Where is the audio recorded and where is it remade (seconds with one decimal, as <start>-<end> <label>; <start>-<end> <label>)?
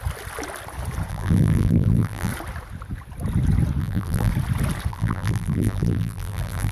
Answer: 0.0-1.1 recorded; 1.1-2.3 remade; 2.3-3.8 recorded; 3.8-4.3 remade; 4.3-4.9 recorded; 4.9-6.7 remade